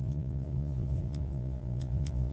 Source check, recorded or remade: remade